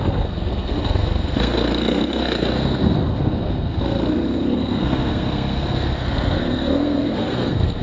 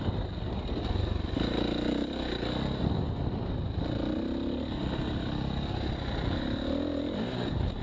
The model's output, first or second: first